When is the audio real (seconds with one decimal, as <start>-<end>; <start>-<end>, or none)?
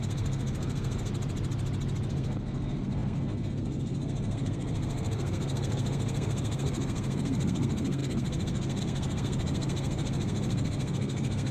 1.1-2.1